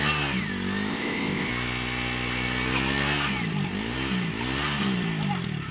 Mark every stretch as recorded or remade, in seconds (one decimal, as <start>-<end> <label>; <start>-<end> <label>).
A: 0.0-0.9 recorded; 0.9-1.5 remade; 1.5-5.7 recorded